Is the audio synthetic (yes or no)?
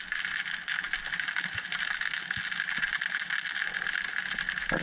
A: no